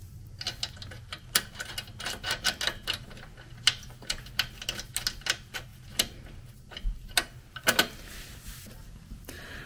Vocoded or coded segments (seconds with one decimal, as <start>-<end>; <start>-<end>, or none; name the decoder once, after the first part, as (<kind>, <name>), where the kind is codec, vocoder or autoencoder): none